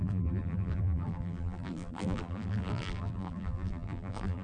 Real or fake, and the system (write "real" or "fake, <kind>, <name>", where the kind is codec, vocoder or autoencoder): fake, vocoder, BigVGAN v2